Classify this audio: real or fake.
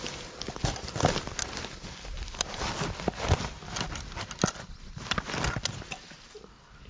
real